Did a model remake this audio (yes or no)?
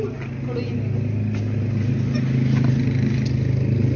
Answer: no